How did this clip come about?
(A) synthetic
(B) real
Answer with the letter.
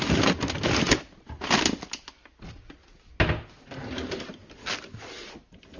B